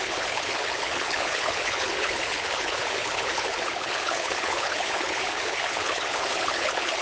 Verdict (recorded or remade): remade